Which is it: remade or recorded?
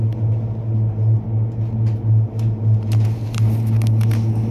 recorded